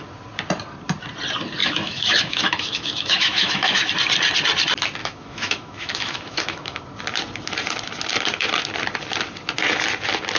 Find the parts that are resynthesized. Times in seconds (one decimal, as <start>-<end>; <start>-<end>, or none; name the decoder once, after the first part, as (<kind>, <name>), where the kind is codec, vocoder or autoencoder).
1.6-3.9 (autoencoder, DAC-VAE); 5.0-6.8